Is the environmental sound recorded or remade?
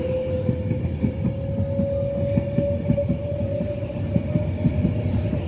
recorded